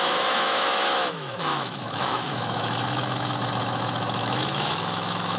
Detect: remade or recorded remade